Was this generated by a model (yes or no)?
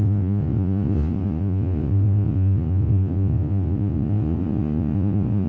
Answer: yes